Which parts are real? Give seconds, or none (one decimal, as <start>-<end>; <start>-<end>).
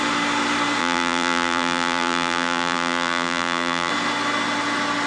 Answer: 0.0-0.8; 3.9-5.1